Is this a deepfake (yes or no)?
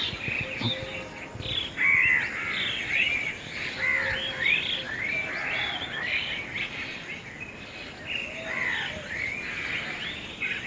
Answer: no